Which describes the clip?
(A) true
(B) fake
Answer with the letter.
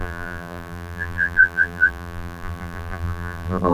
B